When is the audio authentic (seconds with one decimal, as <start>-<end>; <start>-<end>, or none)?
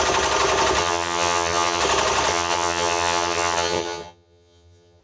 0.0-0.8; 1.8-2.3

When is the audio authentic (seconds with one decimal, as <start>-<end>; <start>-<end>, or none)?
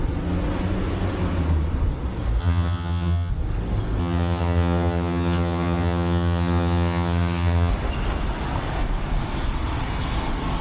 0.0-2.4; 3.3-4.0; 7.7-10.6